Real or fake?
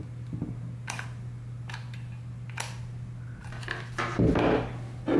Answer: real